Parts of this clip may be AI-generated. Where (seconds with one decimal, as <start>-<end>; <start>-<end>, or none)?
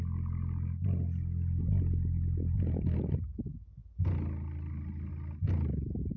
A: none